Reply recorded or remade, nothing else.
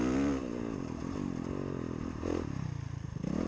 recorded